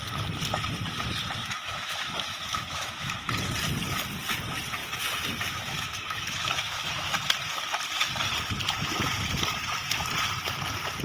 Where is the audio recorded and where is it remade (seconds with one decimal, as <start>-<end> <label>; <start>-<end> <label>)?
0.0-1.4 recorded; 1.4-3.3 remade; 3.3-4.8 recorded; 4.8-7.2 remade; 7.2-11.0 recorded